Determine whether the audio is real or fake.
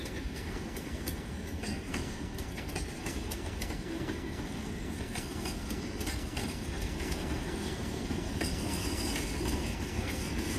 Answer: fake